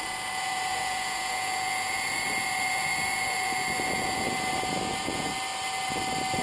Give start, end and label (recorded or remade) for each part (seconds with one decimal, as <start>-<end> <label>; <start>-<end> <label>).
0.0-5.3 remade; 5.3-6.4 recorded